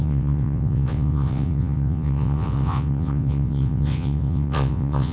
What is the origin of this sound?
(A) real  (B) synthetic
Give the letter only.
B